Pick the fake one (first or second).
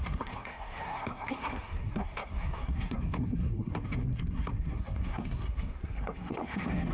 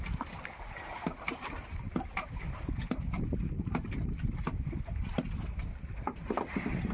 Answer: first